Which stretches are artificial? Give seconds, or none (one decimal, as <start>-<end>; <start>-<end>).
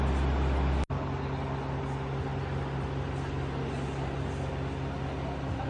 none